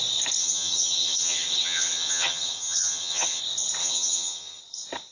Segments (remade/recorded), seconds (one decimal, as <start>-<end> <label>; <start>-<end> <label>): 0.0-0.4 recorded; 0.4-3.4 remade; 3.4-3.8 recorded; 3.8-4.6 remade; 4.6-5.1 recorded

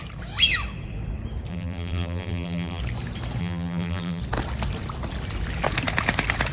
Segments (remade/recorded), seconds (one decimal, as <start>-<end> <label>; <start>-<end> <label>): 0.0-1.5 recorded; 1.5-2.8 remade; 2.8-3.4 recorded; 3.4-4.2 remade; 4.2-6.5 recorded

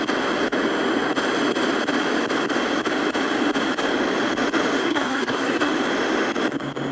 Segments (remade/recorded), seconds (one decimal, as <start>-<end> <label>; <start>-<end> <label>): 0.0-4.8 recorded; 4.8-5.7 remade; 5.7-6.9 recorded

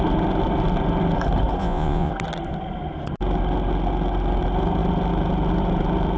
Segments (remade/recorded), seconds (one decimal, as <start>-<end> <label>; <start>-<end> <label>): 0.0-1.6 recorded; 1.6-2.1 remade; 2.1-6.2 recorded

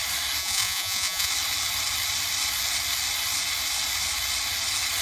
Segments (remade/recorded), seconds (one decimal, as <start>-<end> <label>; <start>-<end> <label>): 0.0-0.4 recorded; 0.4-1.3 remade; 1.3-5.0 recorded

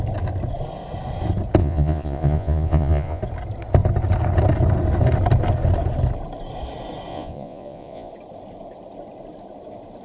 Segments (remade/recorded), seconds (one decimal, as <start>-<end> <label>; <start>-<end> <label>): 0.0-1.6 recorded; 1.6-3.2 remade; 3.2-7.1 recorded; 7.1-8.1 remade; 8.1-10.0 recorded